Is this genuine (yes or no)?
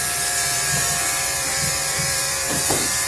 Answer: no